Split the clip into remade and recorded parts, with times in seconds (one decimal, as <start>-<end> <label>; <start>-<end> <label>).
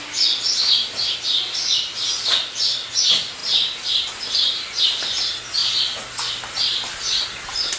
0.0-7.8 recorded